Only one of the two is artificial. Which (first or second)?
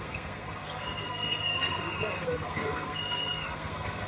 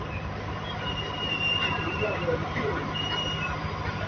first